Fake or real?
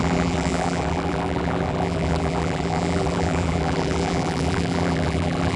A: fake